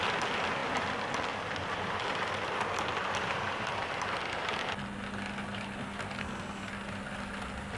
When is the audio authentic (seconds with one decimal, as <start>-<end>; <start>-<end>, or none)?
0.0-6.2; 6.7-7.8